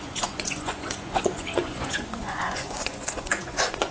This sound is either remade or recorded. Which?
remade